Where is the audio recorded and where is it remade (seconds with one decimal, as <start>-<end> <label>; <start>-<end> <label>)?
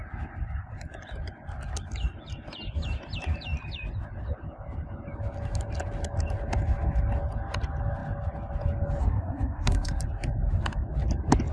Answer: 0.0-9.0 recorded; 9.0-10.0 remade; 10.0-11.5 recorded